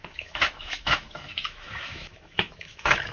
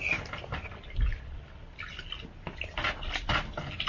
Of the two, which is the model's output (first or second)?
first